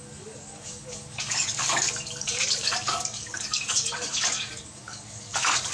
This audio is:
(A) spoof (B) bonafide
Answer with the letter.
A